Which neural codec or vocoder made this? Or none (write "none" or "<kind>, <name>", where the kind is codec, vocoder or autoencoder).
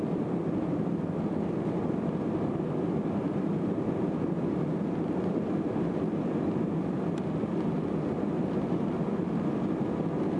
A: none